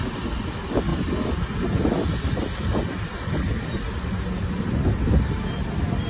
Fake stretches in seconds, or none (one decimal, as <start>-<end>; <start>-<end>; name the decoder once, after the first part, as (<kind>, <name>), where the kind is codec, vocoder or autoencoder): none